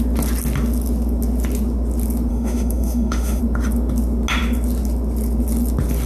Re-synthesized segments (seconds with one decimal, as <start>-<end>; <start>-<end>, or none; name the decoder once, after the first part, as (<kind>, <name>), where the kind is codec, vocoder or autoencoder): 2.3-3.4 (autoencoder, DAC-VAE)